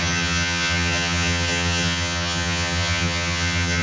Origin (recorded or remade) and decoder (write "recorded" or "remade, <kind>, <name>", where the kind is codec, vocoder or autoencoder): remade, vocoder, HiFi-GAN